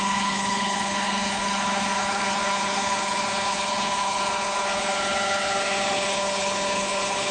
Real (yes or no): no